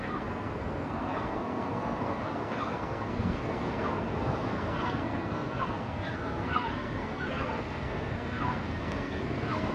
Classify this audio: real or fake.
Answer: fake